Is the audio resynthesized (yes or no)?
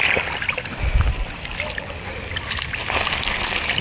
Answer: no